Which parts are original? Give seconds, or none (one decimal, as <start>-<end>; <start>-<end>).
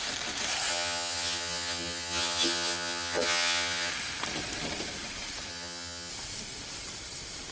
0.0-0.7; 3.9-5.5; 6.1-7.5